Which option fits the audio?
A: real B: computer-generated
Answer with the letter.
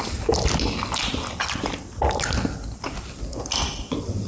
A